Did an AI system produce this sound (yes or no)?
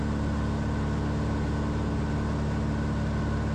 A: no